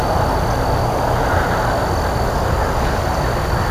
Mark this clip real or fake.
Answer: real